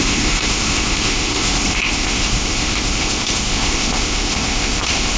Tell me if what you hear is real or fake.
fake